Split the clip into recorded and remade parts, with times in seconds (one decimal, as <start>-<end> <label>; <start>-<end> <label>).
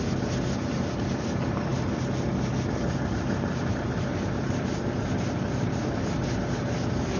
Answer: 0.0-7.2 recorded